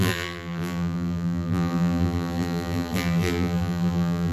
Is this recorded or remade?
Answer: remade